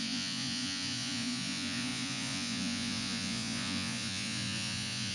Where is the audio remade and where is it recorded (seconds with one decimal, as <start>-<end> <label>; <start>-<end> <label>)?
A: 0.0-5.1 remade